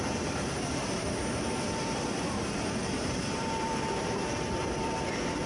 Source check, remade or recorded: remade